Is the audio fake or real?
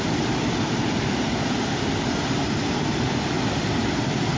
real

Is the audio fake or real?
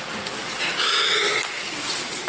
real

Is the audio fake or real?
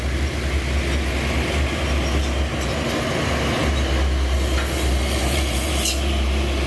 real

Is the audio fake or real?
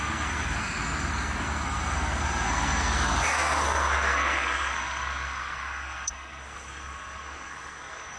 fake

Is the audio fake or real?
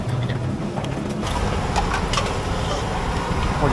real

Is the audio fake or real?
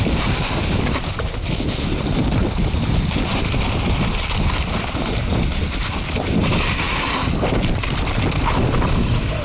fake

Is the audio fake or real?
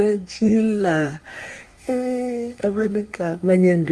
fake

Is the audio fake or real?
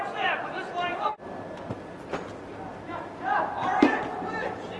real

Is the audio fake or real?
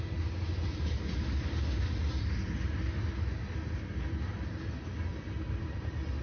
real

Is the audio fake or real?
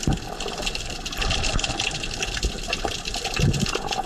real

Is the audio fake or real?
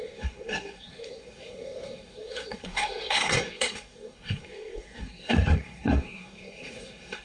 fake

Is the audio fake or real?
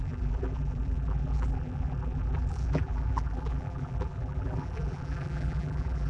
fake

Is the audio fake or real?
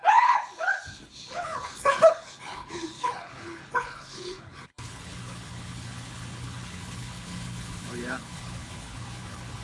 fake